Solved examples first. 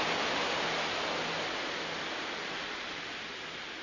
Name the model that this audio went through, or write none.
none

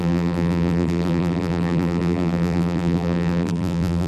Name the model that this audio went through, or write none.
vocoder, BigVGAN v2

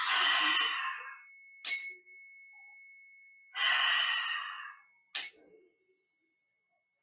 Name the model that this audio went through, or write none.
none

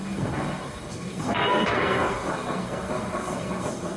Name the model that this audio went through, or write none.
codec, SNAC